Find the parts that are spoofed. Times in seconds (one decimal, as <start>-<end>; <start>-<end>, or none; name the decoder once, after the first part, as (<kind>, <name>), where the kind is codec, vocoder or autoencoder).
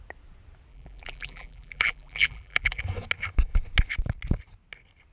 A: 0.7-2.8 (vocoder, BigVGAN v2)